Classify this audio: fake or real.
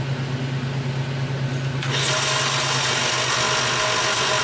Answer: real